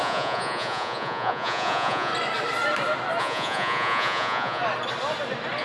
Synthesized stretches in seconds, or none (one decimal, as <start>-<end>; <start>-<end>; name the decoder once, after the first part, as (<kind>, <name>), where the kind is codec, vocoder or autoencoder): 0.0-2.1 (vocoder, Vocos); 3.2-4.6